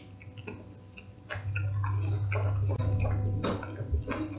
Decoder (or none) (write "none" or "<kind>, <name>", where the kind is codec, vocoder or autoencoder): none